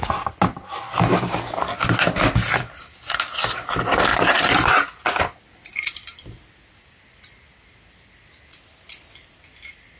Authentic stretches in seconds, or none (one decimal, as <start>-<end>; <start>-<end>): 0.0-10.0